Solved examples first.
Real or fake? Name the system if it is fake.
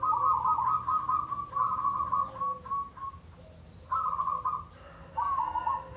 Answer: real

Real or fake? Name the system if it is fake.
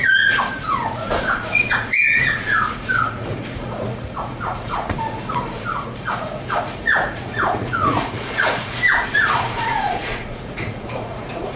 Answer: fake, vocoder, Vocos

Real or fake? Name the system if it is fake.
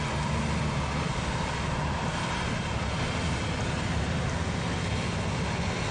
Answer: real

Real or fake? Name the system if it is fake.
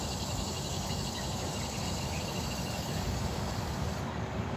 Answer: fake, codec, DAC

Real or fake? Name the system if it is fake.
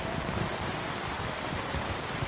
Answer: fake, vocoder, BigVGAN v2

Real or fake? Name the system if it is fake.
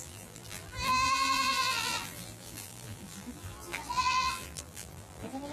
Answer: fake, vocoder, BigVGAN v2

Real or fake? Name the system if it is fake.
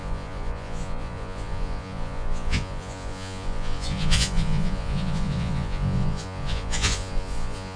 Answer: fake, vocoder, Vocos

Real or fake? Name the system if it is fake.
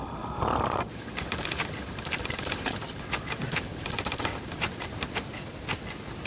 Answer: fake, vocoder, BigVGAN v2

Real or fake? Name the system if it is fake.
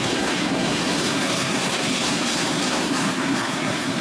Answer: fake, codec, SNAC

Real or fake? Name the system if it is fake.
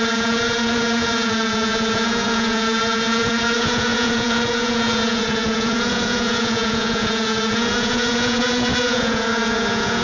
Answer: fake, vocoder, Vocos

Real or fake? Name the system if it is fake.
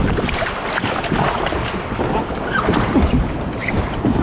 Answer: real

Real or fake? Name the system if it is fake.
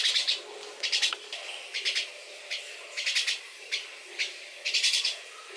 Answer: real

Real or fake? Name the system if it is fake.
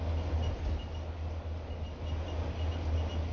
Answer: real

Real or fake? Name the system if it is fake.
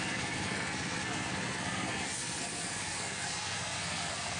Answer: fake, codec, SNAC